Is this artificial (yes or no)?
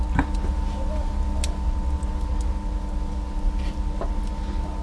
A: no